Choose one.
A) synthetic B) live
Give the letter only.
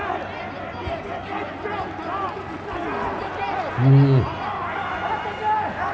B